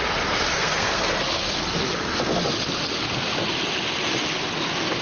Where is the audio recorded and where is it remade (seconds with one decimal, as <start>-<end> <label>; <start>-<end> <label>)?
0.0-0.5 recorded; 0.5-1.1 remade; 1.1-5.0 recorded